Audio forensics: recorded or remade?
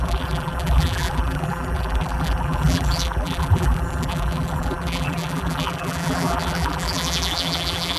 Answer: remade